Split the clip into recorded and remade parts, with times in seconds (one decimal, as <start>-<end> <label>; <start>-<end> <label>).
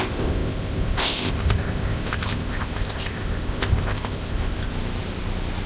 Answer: 0.0-4.7 remade; 4.7-5.7 recorded